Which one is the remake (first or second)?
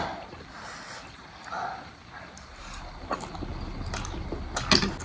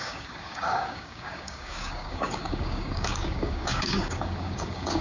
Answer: second